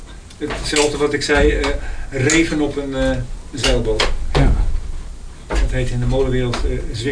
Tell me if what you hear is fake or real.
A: real